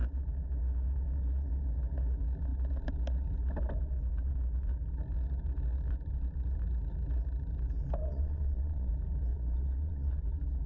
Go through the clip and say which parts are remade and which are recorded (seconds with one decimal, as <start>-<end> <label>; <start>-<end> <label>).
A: 0.0-8.1 recorded; 8.1-8.9 remade; 8.9-9.3 recorded; 9.3-10.2 remade; 10.2-10.7 recorded